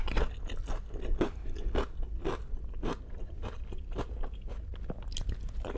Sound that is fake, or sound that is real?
real